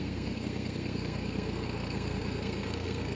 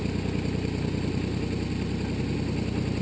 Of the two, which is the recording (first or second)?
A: second